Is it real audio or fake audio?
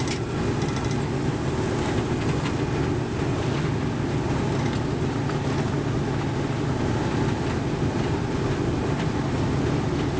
real